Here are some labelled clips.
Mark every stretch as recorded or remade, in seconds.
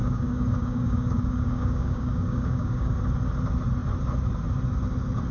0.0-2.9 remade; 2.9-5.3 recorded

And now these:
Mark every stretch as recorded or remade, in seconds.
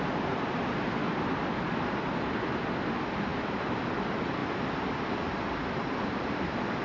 0.0-4.4 remade; 4.4-5.4 recorded; 5.4-6.8 remade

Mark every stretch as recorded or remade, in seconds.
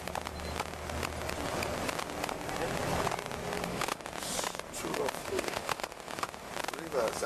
0.0-3.7 recorded; 3.7-4.3 remade; 4.3-5.2 recorded; 5.2-6.5 remade; 6.5-7.3 recorded